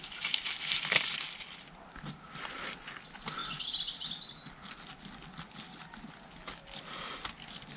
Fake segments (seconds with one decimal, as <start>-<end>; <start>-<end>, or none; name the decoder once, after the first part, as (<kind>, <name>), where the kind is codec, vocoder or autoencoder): none